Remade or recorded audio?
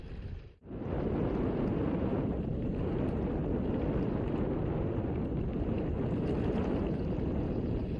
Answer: recorded